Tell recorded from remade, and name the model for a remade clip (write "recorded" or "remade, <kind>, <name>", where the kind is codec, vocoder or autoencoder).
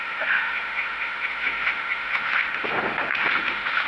remade, autoencoder, DAC-VAE